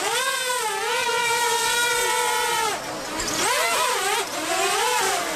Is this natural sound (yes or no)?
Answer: yes